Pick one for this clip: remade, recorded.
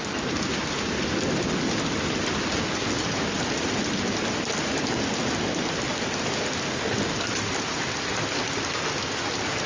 recorded